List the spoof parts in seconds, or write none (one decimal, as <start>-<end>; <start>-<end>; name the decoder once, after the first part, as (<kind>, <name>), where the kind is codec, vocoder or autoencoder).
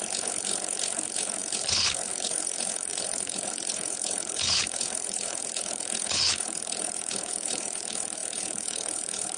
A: 0.0-9.4 (codec, HILCodec)